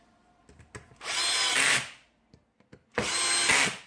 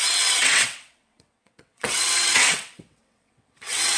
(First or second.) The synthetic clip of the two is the second